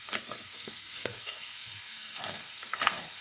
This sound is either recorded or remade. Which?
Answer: remade